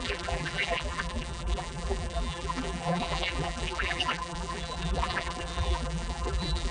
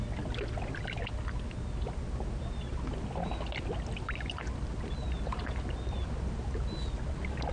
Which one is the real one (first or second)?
second